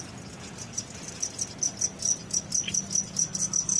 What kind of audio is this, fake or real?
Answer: real